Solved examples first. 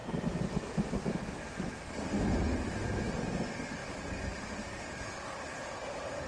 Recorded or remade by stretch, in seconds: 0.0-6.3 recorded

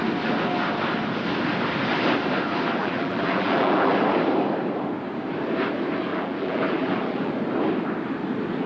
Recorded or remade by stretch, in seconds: 0.0-2.8 recorded; 2.8-4.0 remade; 4.0-6.1 recorded; 6.1-7.3 remade; 7.3-8.7 recorded

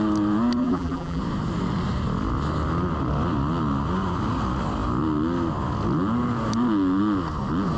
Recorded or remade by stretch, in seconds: 0.0-0.6 recorded; 0.6-1.2 remade; 1.2-7.8 recorded

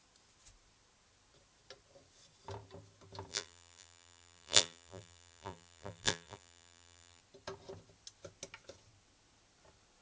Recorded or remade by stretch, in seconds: 0.0-3.3 recorded; 3.3-7.2 remade; 7.2-10.0 recorded

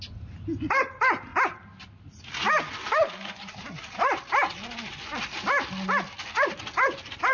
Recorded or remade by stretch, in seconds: 0.0-7.3 recorded